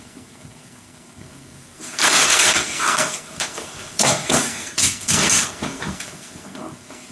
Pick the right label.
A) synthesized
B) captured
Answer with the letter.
A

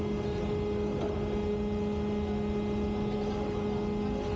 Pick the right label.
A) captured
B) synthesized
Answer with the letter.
A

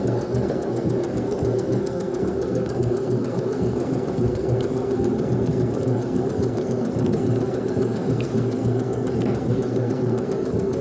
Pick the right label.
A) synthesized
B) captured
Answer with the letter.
A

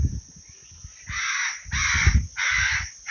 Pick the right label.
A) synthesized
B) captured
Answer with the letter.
B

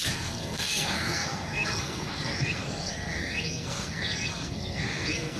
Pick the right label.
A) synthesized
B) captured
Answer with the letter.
A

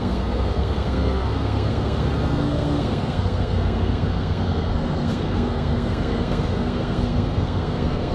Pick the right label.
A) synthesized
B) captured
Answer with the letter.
A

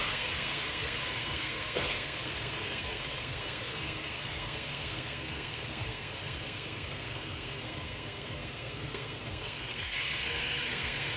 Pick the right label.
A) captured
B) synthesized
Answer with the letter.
B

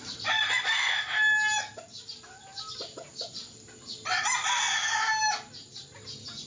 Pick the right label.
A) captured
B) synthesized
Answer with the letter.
A